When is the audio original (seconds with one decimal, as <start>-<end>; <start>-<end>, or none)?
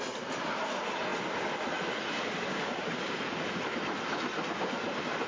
0.0-2.5; 3.2-5.3